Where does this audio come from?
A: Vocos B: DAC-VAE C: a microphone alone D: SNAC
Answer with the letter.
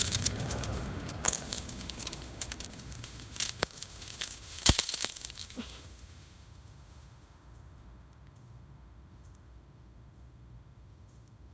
B